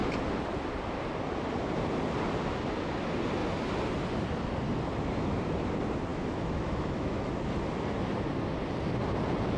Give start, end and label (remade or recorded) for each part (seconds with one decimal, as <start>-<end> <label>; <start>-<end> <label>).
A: 0.0-6.1 recorded; 6.1-7.3 remade; 7.3-9.6 recorded